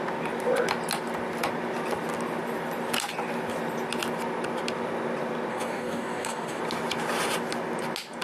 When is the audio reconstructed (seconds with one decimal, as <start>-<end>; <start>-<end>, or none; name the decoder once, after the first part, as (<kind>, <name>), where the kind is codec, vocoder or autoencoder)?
5.5-6.6 (codec, DAC)